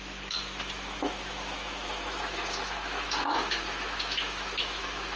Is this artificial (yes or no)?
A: yes